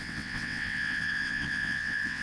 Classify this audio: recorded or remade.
remade